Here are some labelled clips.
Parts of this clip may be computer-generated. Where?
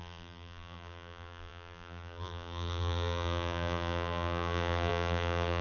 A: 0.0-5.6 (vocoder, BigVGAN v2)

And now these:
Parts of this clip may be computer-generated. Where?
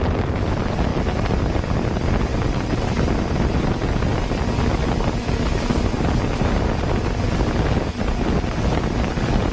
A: 0.0-2.3 (vocoder, BigVGAN v2); 3.5-4.1; 7.3-7.9; 8.6-9.5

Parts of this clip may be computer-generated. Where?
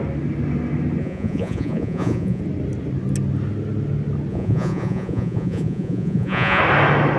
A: 1.0-2.4 (vocoder, Vocos); 4.3-6.6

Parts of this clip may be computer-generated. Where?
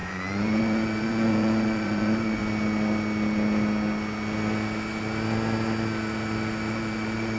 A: 0.0-2.4 (vocoder, Vocos); 6.7-7.4